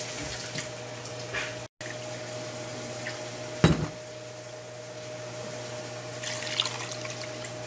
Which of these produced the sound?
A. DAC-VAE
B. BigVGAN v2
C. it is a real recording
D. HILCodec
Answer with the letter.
C